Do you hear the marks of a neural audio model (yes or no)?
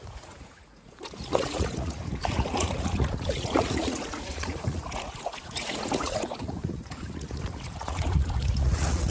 yes